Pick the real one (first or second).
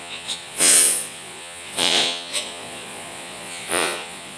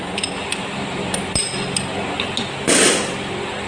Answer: second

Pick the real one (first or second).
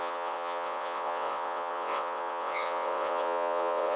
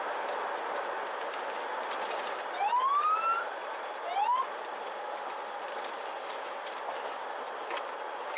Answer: second